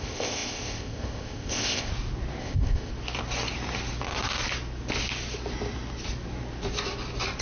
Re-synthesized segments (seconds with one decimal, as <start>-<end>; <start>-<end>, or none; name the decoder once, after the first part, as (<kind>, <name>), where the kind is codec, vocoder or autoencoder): 0.0-1.9 (codec, ZipCodec); 2.4-2.9